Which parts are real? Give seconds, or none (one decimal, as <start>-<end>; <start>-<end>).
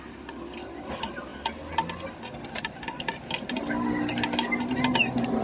0.0-5.4